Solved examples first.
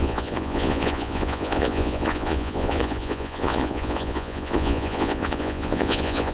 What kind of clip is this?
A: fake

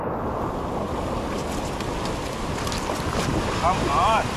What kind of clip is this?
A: real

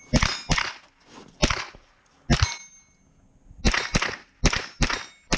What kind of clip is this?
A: real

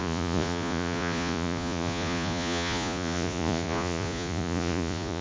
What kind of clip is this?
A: fake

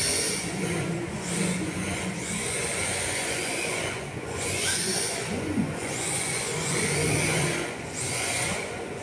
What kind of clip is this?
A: fake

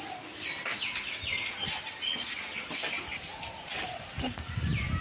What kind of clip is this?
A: real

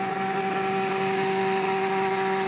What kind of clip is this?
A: real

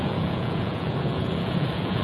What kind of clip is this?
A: fake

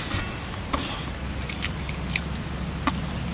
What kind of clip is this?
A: real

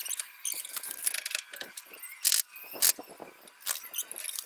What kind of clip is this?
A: real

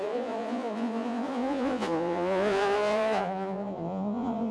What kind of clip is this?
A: fake